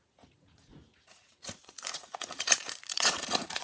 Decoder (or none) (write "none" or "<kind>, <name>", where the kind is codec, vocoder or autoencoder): vocoder, Vocos